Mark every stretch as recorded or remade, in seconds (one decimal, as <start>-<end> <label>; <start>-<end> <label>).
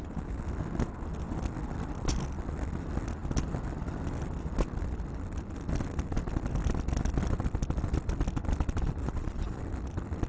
0.0-9.0 recorded; 9.0-9.6 remade; 9.6-10.3 recorded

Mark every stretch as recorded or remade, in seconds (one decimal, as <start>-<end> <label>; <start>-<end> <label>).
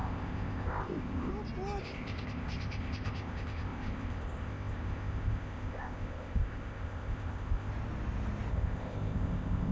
0.0-1.3 remade; 1.3-1.8 recorded; 1.8-7.7 remade; 7.7-8.5 recorded; 8.5-9.7 remade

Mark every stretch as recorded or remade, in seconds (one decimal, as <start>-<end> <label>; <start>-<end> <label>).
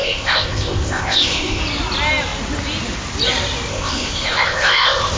0.0-1.6 remade; 1.6-3.7 recorded; 3.7-5.2 remade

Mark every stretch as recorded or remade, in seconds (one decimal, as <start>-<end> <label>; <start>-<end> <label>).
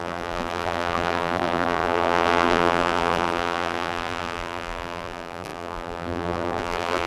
0.0-7.1 remade